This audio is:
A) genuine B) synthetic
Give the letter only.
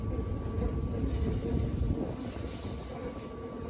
A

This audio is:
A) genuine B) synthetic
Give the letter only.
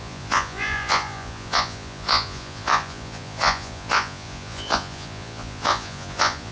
B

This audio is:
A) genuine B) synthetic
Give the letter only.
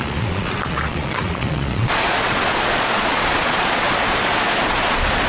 B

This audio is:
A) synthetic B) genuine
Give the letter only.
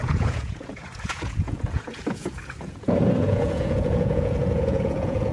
A